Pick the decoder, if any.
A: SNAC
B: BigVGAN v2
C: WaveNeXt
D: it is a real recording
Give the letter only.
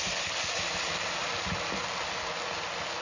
D